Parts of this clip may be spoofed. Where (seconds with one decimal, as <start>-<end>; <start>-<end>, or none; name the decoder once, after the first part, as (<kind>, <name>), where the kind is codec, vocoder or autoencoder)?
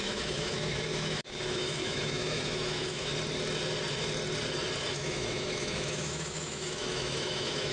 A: 0.0-3.1 (autoencoder, DAC-VAE); 4.9-7.7